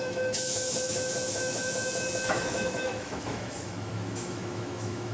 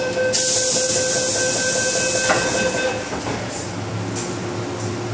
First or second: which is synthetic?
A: first